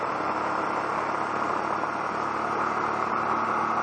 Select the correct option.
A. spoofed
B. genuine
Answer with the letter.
B